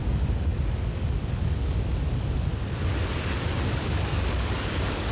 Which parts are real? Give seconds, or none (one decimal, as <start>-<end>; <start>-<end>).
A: 2.5-3.1